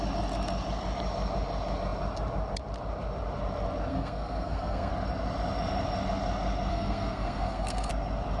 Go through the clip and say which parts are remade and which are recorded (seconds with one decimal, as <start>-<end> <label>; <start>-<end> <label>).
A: 0.0-3.9 recorded; 3.9-4.9 remade; 4.9-6.7 recorded; 6.7-7.9 remade; 7.9-8.4 recorded